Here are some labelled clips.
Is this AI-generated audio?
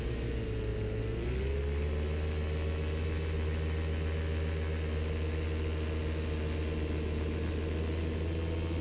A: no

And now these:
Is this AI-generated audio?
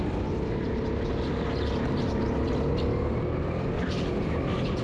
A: no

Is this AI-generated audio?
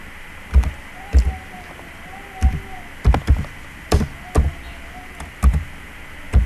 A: no